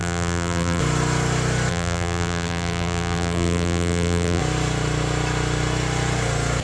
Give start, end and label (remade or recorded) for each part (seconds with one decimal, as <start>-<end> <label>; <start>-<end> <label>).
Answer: 0.0-0.8 remade; 0.8-1.7 recorded; 1.7-4.4 remade; 4.4-6.6 recorded